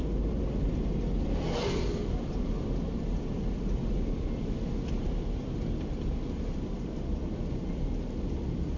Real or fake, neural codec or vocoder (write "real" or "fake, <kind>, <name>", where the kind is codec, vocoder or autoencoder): real